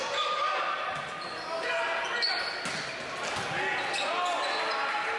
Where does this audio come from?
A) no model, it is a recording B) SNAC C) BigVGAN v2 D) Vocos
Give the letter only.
A